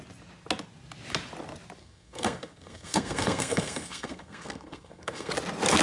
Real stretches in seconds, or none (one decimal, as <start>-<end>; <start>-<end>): 0.0-1.8; 5.3-5.8